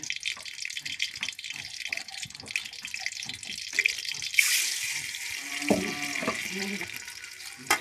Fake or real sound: real